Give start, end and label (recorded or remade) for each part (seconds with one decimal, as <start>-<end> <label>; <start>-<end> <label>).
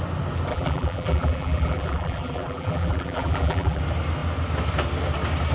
0.0-0.5 recorded; 0.5-3.8 remade; 3.8-5.5 recorded